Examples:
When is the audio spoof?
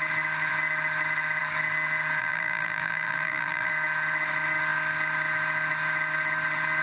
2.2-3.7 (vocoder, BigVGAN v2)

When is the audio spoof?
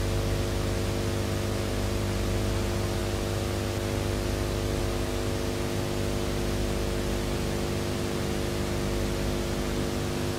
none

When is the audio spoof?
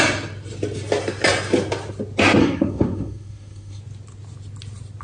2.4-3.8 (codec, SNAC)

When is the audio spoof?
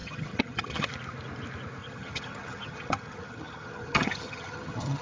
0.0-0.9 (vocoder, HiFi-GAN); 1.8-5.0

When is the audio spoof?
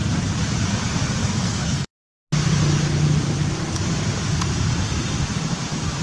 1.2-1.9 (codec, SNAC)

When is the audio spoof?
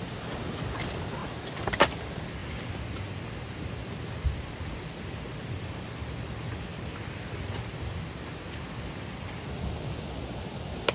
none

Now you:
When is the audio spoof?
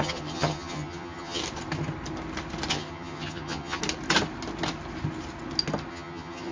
0.0-1.4 (vocoder, HiFi-GAN); 2.7-3.8; 5.9-6.5